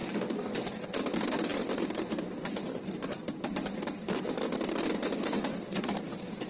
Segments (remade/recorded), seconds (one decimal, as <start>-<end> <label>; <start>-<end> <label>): 0.0-1.5 recorded; 1.5-4.5 remade; 4.5-6.5 recorded